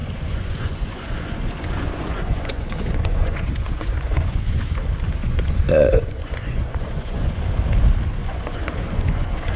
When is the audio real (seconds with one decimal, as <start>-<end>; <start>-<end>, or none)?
4.6-5.2; 7.4-8.2